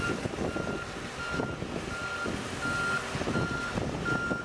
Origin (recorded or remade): recorded